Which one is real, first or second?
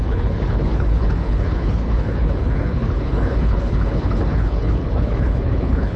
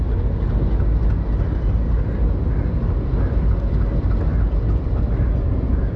second